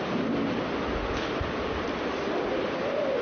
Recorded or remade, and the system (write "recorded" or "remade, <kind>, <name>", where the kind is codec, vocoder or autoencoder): recorded